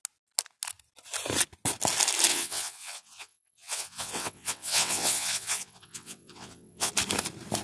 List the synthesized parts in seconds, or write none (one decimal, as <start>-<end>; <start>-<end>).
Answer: 2.3-6.9